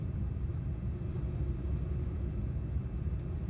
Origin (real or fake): real